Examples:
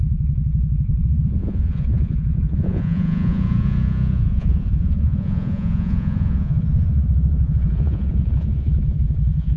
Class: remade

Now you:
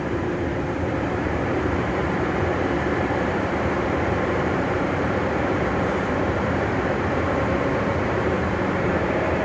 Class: remade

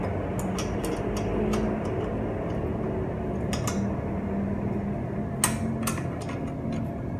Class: recorded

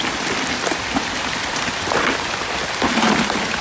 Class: recorded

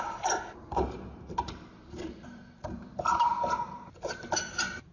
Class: remade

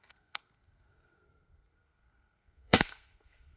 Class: remade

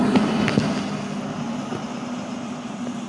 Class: recorded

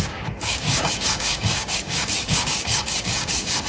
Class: remade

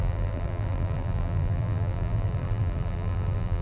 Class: remade